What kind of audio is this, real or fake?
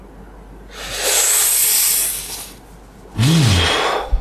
real